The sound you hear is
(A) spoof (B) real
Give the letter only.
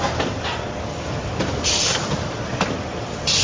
B